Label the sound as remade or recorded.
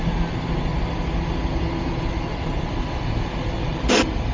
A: recorded